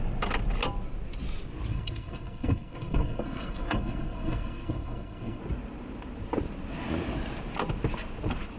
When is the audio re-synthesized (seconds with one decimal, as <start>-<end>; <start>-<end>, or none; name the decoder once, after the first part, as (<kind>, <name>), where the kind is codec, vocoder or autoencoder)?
1.7-5.4 (codec, SNAC)